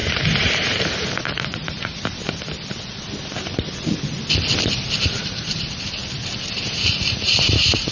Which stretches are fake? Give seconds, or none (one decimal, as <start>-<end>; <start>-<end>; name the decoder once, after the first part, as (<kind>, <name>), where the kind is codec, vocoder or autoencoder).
0.0-2.2 (vocoder, BigVGAN v2); 5.2-6.0; 6.5-7.9